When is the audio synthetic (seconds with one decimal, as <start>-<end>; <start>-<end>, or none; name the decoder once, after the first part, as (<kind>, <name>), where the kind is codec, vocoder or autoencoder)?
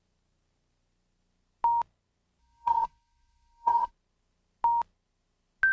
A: 2.4-3.9 (codec, SNAC)